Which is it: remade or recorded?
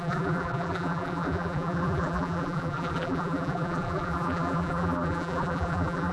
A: remade